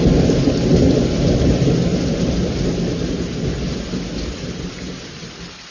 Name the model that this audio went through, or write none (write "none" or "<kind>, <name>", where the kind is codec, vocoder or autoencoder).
none